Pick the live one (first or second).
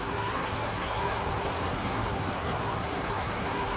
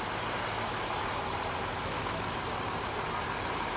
second